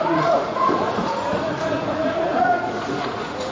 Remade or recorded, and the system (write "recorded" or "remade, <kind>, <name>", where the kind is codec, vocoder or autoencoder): remade, vocoder, Vocos